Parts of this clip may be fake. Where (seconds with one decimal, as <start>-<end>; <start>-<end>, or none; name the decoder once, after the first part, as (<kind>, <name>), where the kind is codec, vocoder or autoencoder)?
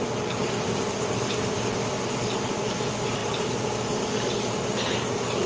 3.2-3.8 (vocoder, BigVGAN v2)